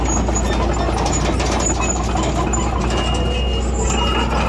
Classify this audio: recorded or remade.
recorded